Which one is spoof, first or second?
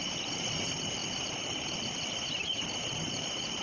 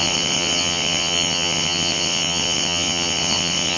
second